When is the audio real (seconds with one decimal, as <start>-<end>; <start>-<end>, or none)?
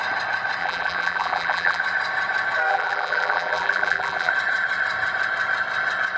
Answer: 0.0-0.6; 1.8-2.7; 4.3-6.2